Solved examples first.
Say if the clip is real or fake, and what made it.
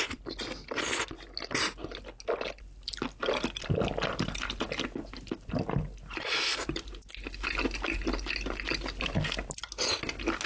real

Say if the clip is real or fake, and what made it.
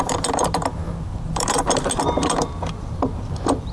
fake, vocoder, BigVGAN v2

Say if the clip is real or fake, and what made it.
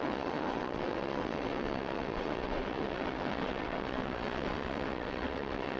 fake, vocoder, WaveNeXt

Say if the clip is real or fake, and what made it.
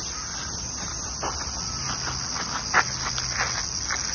real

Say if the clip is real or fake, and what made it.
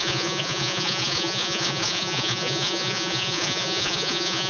fake, vocoder, Vocos